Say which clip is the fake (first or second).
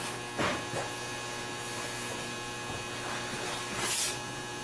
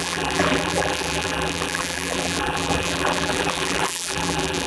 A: second